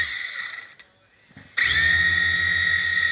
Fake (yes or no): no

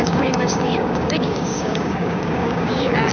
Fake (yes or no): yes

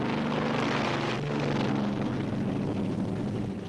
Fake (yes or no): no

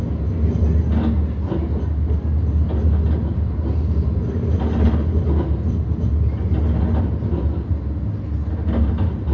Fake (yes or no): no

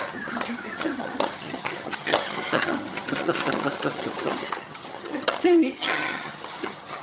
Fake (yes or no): yes